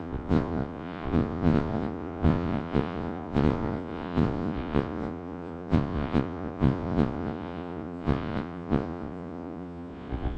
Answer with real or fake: fake